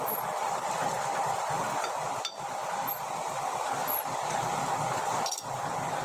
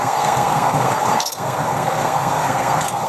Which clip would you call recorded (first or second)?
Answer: first